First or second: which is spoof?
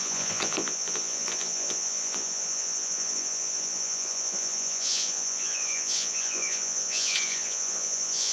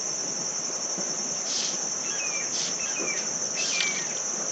first